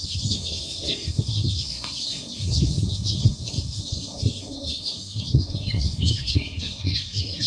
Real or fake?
fake